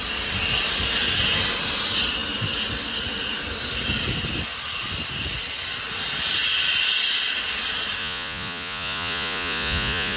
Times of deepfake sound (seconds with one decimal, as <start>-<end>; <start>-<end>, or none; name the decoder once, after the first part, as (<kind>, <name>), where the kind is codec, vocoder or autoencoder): 8.0-10.2 (vocoder, Vocos)